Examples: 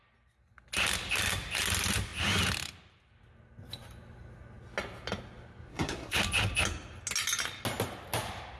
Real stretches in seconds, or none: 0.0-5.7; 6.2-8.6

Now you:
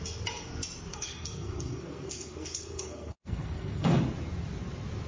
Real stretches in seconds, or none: 0.0-0.9; 4.0-5.1

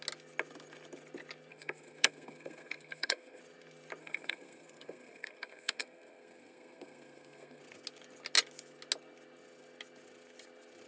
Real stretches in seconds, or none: 0.0-1.5; 3.4-4.0; 7.6-10.9